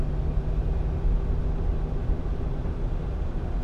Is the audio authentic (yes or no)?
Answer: yes